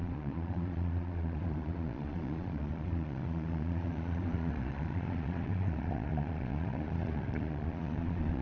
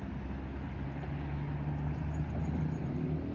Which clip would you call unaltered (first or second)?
second